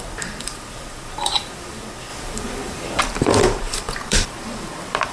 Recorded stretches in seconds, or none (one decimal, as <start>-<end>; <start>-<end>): none